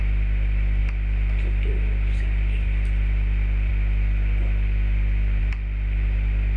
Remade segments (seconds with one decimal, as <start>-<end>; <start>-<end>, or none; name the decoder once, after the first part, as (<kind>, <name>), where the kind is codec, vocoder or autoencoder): 0.0-3.7 (vocoder, BigVGAN v2); 5.4-6.6